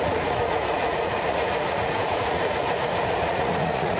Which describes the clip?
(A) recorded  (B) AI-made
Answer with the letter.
B